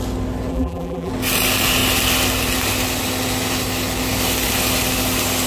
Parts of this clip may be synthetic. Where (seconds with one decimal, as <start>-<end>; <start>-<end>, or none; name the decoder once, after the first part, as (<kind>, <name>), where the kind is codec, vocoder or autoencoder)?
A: 0.5-1.1 (vocoder, BigVGAN v2)